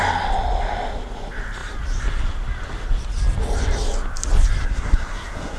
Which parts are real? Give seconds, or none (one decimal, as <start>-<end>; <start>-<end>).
0.0-4.6